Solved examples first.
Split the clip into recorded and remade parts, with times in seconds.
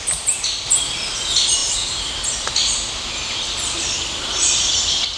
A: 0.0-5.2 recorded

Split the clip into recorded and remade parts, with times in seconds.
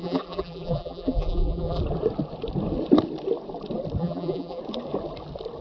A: 0.0-1.8 remade; 1.8-4.0 recorded; 4.0-4.6 remade; 4.6-5.6 recorded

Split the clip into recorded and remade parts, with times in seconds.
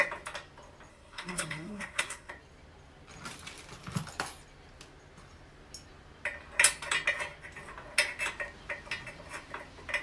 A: 0.0-0.9 recorded; 0.9-2.3 remade; 2.3-10.0 recorded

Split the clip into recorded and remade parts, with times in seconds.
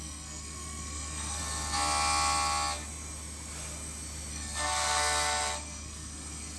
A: 0.0-1.4 remade; 1.4-4.3 recorded; 4.3-6.6 remade